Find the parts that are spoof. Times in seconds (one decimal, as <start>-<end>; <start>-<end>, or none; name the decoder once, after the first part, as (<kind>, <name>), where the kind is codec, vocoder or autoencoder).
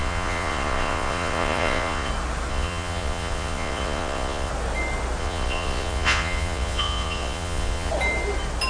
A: 0.0-2.1 (vocoder, Vocos); 2.5-4.5; 5.2-7.9